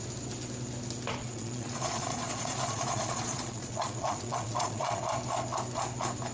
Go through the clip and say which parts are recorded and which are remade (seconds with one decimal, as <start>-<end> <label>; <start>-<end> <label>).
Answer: 0.0-1.2 recorded; 1.2-5.0 remade; 5.0-6.3 recorded